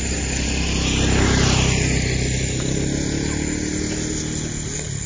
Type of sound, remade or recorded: recorded